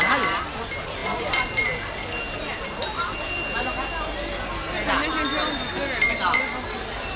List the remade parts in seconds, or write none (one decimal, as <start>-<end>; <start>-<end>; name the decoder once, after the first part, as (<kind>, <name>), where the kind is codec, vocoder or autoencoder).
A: none